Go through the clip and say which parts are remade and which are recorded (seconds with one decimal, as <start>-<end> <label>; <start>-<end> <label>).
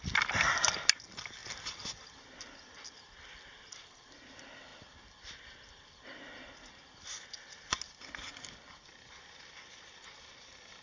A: 0.0-10.8 recorded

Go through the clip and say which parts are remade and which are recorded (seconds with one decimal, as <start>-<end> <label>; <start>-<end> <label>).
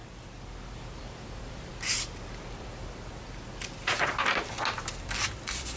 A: 0.0-0.7 recorded; 0.7-1.7 remade; 1.7-5.2 recorded; 5.2-5.8 remade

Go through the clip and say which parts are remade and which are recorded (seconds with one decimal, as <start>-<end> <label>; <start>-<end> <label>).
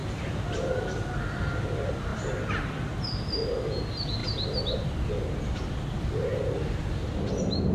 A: 0.0-7.7 recorded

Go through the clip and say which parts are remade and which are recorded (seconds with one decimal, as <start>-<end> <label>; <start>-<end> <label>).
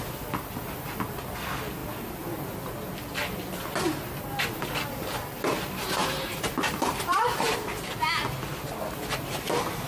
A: 0.0-6.0 recorded; 6.0-8.0 remade; 8.0-9.9 recorded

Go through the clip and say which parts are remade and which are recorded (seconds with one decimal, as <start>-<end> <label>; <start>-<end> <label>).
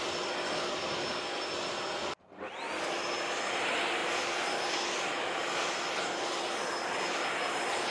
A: 0.0-7.9 recorded